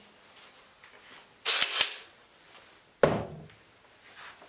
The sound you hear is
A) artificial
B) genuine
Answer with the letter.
B